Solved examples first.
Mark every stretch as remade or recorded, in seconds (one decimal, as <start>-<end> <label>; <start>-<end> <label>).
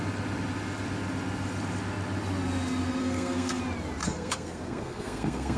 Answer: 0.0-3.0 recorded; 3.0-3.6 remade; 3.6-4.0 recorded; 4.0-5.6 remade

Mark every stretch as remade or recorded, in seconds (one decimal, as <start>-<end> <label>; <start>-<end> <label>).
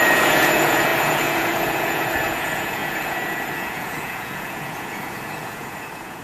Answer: 0.0-6.2 remade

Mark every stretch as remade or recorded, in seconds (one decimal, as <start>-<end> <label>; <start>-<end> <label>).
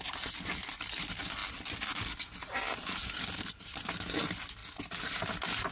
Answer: 0.0-5.7 recorded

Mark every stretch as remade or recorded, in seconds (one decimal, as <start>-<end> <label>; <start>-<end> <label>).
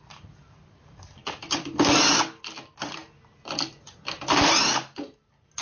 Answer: 0.0-5.6 recorded